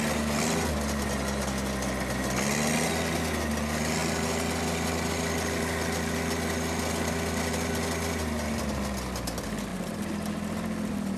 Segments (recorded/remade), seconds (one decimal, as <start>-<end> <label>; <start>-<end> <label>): 0.0-11.2 recorded